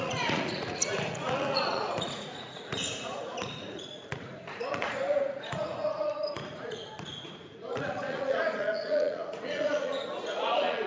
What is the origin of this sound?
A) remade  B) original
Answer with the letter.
A